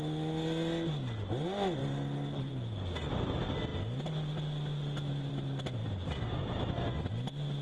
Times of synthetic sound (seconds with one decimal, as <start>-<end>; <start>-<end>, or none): none